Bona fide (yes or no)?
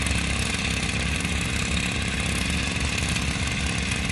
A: yes